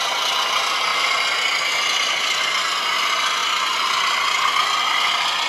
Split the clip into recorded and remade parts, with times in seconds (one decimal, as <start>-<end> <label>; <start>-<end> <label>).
0.0-5.5 recorded